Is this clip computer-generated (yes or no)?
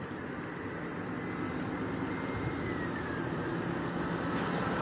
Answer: no